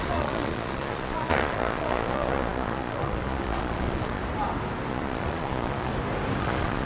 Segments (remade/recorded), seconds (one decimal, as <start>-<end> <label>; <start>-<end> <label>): 0.0-4.2 remade; 4.2-4.9 recorded; 4.9-5.9 remade; 5.9-6.4 recorded; 6.4-6.9 remade